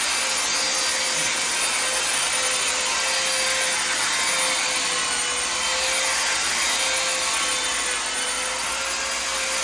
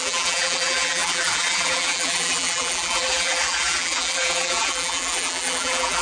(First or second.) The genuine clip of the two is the first